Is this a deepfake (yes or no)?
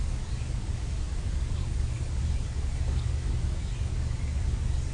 yes